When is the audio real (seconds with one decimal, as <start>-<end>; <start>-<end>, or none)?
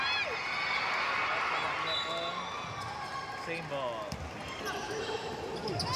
0.0-4.4; 5.3-6.0